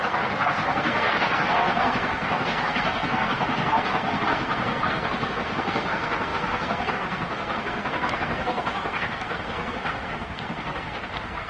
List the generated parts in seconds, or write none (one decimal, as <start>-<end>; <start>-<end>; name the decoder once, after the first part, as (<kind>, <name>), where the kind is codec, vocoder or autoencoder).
0.0-11.5 (codec, SNAC)